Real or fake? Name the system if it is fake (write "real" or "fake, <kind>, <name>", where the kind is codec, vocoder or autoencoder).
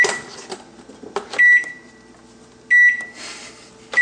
real